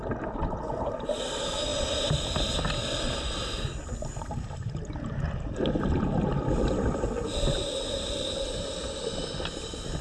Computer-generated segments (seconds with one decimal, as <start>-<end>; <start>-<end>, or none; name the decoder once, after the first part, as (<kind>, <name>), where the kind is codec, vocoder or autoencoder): none